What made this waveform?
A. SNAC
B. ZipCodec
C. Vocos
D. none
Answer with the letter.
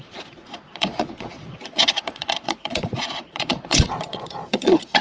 C